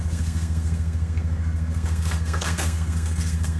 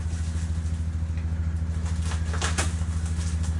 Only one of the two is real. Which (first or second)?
second